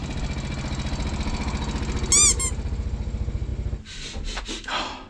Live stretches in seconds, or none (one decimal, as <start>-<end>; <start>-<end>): 0.0-5.1